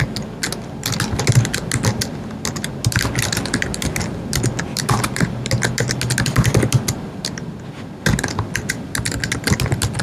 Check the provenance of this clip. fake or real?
real